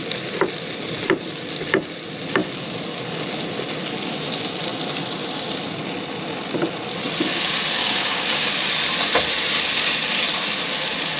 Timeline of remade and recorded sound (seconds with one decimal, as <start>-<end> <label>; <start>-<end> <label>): 0.0-7.8 recorded; 7.8-8.5 remade; 8.5-11.2 recorded